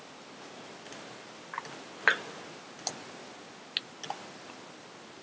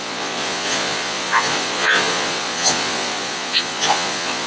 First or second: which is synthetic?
second